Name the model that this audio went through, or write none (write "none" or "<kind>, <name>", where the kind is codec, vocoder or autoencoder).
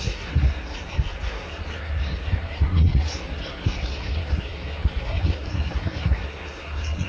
codec, SNAC